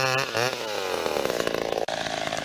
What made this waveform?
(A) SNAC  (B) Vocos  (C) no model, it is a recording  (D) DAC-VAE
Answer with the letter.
C